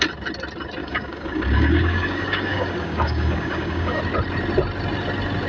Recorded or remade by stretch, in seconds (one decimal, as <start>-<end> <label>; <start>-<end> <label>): 0.0-0.8 recorded; 0.8-4.0 remade; 4.0-5.5 recorded